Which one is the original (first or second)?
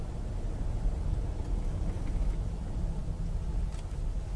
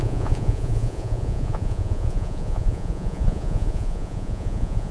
first